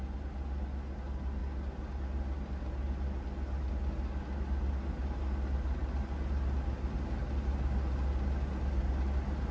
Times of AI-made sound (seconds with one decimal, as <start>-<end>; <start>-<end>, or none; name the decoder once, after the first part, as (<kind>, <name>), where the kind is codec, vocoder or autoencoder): none

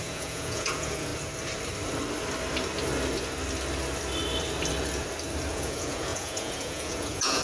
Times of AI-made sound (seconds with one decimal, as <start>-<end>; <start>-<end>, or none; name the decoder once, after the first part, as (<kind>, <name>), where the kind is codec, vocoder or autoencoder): 0.0-1.1 (vocoder, Vocos); 5.5-7.4

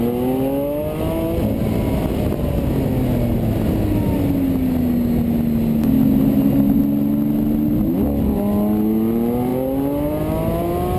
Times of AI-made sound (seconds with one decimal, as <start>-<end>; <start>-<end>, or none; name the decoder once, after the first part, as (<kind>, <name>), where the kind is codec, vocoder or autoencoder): none

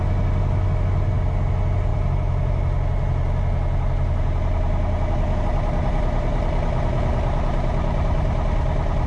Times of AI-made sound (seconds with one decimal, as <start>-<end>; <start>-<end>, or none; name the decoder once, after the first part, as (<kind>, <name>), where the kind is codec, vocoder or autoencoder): none